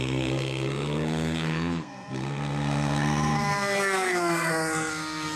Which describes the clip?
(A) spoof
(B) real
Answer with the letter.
A